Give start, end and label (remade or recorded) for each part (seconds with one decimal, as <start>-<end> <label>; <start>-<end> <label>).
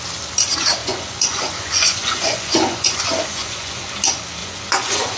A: 0.0-0.8 recorded; 0.8-3.9 remade; 3.9-4.4 recorded; 4.4-5.2 remade